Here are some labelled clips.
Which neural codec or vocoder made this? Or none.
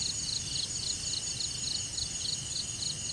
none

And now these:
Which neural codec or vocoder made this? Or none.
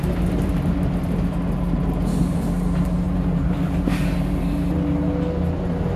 none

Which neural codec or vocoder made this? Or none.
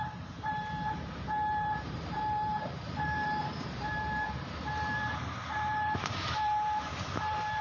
vocoder, BigVGAN v2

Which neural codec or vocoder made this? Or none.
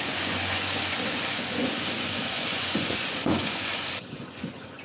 vocoder, Vocos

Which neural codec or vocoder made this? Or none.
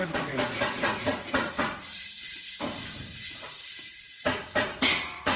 vocoder, Vocos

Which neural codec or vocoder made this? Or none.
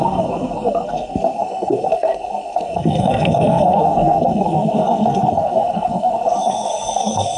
codec, SNAC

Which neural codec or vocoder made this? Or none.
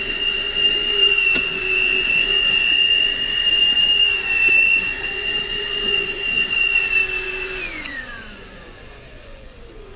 vocoder, Vocos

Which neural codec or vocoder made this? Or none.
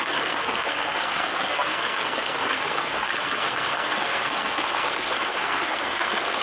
codec, SNAC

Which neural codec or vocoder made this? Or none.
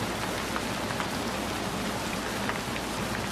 none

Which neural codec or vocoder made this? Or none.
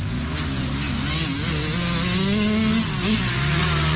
none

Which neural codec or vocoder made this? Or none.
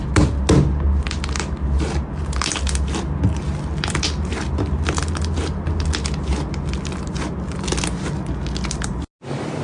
none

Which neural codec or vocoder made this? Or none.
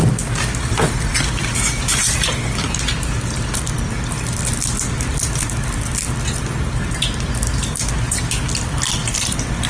none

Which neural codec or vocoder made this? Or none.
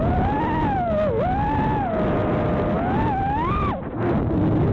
none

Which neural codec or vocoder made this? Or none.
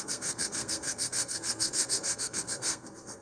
codec, SNAC